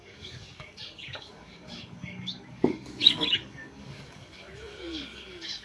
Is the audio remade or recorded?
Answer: remade